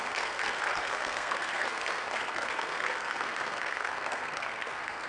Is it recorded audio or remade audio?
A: remade